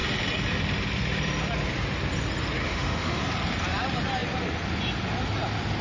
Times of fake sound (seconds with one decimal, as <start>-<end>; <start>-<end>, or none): 2.6-3.2